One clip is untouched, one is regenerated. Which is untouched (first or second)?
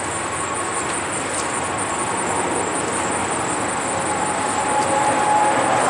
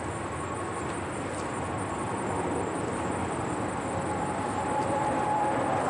first